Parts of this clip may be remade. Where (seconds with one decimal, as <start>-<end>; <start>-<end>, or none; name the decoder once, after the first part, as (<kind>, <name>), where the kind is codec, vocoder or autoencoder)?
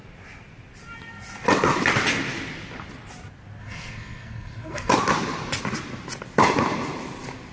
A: 3.6-4.9 (codec, SNAC)